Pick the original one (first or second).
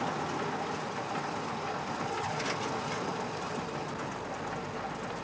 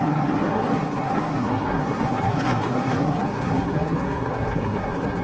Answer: first